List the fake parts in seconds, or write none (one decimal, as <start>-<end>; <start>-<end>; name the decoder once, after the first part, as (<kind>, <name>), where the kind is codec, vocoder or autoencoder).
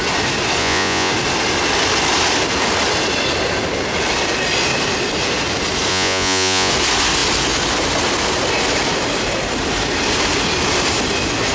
0.6-1.1 (vocoder, Vocos); 5.9-6.7